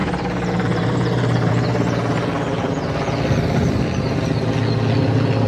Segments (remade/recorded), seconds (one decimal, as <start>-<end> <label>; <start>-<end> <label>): 0.0-1.5 remade; 1.5-5.5 recorded